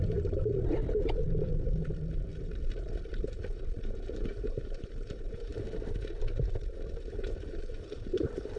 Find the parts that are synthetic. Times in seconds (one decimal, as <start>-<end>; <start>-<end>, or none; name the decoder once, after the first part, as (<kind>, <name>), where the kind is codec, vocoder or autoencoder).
0.0-0.8 (vocoder, BigVGAN v2); 1.4-5.5; 7.0-8.6